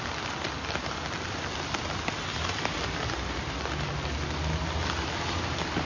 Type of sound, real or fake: real